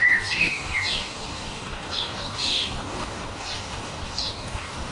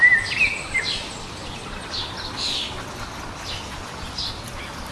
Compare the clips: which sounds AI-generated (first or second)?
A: first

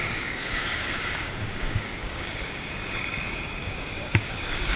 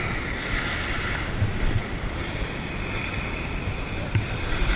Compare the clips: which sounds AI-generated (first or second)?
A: first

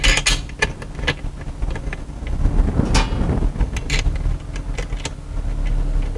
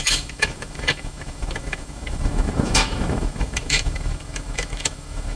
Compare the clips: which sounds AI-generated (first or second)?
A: second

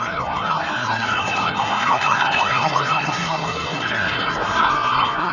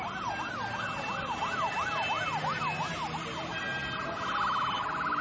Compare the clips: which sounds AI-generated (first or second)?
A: first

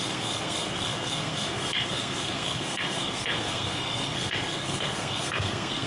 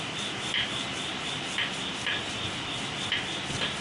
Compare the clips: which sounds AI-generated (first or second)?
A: first